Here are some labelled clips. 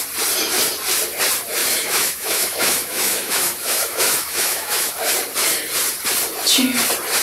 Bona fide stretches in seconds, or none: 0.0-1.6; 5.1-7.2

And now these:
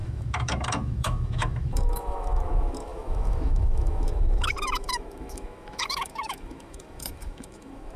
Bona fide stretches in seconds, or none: none

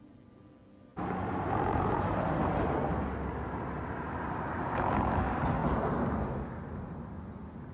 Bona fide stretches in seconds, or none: 0.0-7.7

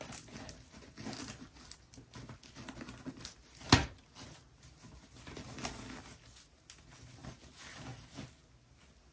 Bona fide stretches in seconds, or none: 0.0-9.1

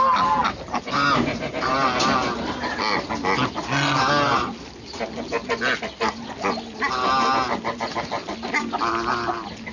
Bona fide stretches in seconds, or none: 0.0-9.7